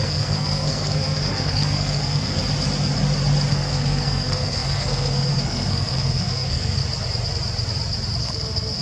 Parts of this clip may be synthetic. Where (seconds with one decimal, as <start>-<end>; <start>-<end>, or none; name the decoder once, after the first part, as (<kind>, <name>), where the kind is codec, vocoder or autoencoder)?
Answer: 0.0-2.4 (codec, SNAC); 3.5-6.8; 8.2-8.8